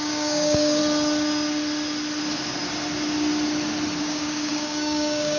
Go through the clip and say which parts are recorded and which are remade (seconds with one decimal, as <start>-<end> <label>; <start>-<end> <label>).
0.0-0.8 remade; 0.8-4.0 recorded; 4.0-5.4 remade